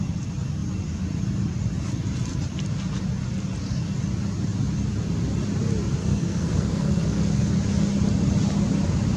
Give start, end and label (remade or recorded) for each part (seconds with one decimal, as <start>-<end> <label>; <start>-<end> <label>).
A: 0.0-6.0 recorded; 6.0-7.5 remade; 7.5-9.2 recorded